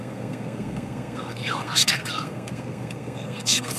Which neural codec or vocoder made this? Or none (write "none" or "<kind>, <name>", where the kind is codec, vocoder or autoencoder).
codec, SNAC